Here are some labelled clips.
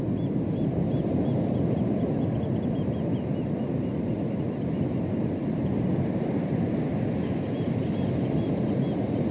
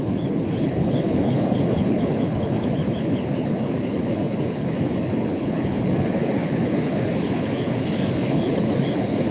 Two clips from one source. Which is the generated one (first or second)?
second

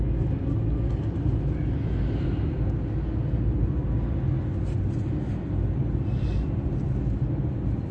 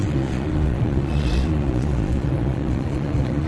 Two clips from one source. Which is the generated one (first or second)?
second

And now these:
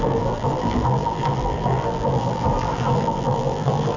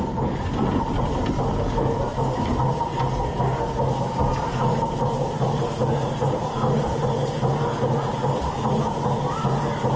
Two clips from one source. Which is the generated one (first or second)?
first